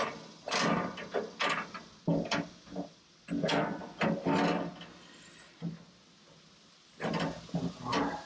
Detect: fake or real real